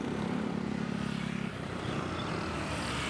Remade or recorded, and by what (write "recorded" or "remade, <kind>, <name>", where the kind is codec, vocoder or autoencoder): recorded